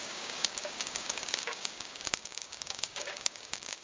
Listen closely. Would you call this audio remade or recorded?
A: remade